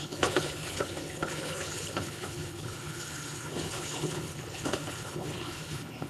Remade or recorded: remade